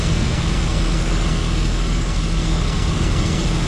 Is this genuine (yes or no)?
no